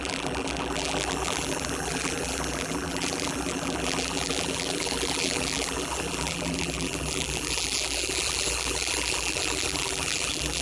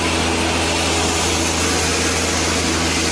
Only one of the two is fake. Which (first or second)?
first